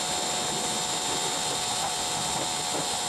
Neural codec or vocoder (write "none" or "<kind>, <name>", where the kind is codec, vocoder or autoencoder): none